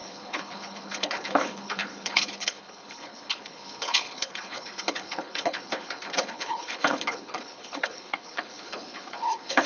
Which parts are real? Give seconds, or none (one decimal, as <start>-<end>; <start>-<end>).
none